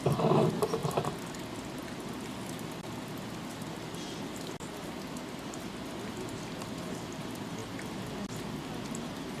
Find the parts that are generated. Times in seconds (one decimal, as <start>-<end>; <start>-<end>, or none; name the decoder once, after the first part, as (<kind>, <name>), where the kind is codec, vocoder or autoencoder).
none